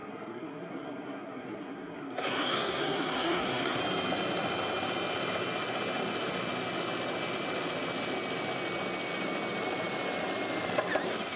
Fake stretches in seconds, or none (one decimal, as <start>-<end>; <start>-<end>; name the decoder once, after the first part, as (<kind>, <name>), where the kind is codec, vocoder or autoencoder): 0.0-3.8 (codec, SNAC)